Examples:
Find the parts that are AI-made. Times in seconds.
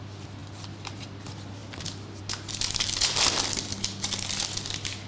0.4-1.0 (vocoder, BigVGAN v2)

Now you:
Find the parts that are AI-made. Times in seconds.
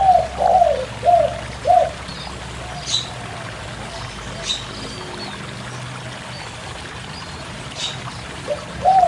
1.6-2.1 (vocoder, BigVGAN v2); 6.9-9.1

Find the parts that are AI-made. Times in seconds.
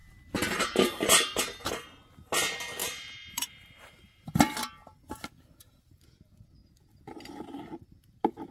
0.0-1.7 (vocoder, BigVGAN v2); 2.8-4.3; 4.8-5.9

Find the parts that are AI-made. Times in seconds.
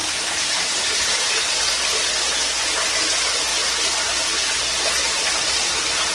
0.0-1.3 (vocoder, BigVGAN v2); 3.5-4.3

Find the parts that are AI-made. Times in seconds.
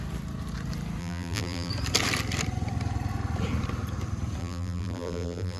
1.0-1.7 (vocoder, BigVGAN v2); 4.4-5.6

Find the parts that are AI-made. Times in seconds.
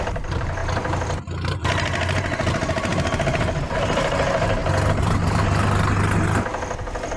0.0-0.6 (vocoder, BigVGAN v2); 3.7-4.6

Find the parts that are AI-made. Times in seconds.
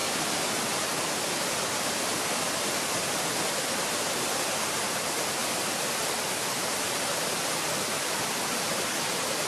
5.4-8.3 (vocoder, BigVGAN v2)